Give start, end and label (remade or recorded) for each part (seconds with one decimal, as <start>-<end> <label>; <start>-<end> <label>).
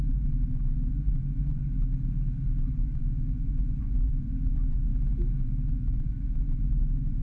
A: 0.0-1.7 remade; 1.7-2.5 recorded; 2.5-4.9 remade; 4.9-5.4 recorded; 5.4-7.2 remade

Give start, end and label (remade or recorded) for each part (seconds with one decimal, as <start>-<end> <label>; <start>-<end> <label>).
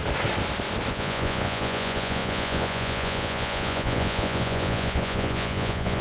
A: 0.0-0.9 recorded; 0.9-6.0 remade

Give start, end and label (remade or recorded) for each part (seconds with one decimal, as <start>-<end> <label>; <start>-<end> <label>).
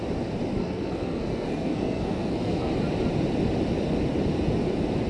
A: 0.0-0.6 recorded; 0.6-2.7 remade; 2.7-5.1 recorded